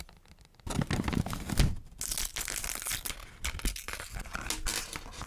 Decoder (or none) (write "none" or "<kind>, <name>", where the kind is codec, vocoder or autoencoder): none